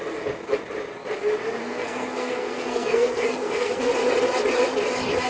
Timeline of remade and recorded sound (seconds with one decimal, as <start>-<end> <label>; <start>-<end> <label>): 0.0-1.6 recorded; 1.6-3.9 remade; 3.9-5.3 recorded